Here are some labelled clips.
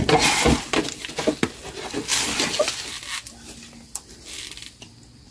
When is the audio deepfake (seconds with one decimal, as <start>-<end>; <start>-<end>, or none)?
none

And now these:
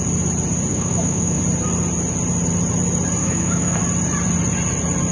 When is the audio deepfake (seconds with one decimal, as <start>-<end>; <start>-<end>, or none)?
0.7-1.4; 3.2-3.8

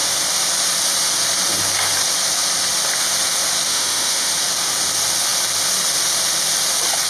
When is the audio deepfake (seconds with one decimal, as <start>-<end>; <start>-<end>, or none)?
3.7-4.3

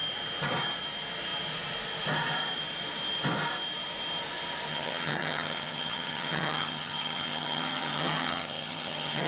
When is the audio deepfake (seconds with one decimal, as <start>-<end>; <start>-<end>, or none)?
4.7-9.3

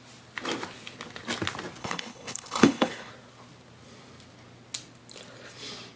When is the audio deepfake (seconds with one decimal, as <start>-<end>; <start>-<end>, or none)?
1.8-3.1

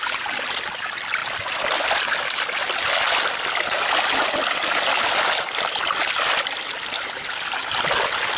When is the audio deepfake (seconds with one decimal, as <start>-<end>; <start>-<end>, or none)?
none